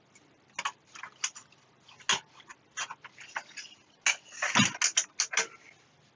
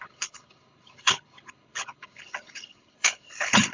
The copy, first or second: second